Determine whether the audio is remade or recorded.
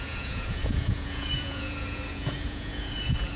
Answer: remade